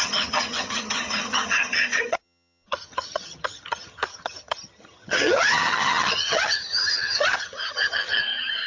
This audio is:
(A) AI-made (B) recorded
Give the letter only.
A